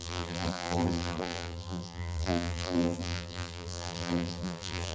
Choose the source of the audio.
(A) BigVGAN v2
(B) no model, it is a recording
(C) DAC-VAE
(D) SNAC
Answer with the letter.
A